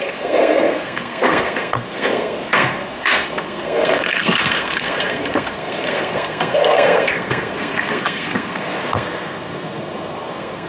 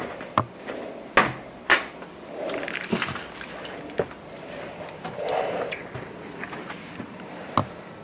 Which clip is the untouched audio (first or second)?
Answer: second